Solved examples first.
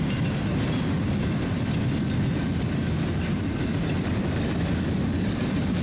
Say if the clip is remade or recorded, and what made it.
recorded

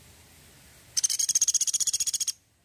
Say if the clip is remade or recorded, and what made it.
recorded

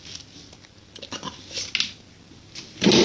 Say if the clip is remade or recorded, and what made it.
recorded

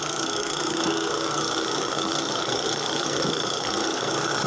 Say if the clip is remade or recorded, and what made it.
remade, codec, SNAC